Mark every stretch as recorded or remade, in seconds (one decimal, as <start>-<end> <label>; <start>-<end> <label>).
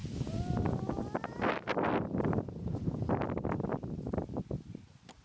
0.0-5.2 recorded